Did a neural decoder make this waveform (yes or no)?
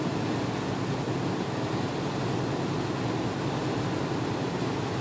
no